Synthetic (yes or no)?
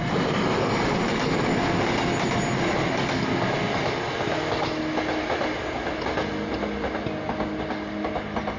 no